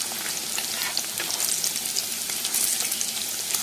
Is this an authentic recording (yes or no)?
yes